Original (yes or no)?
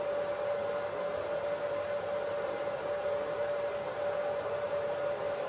yes